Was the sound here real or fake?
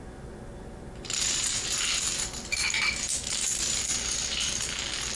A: real